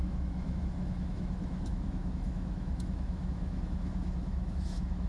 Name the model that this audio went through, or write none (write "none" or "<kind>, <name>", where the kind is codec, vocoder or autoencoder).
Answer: autoencoder, DAC-VAE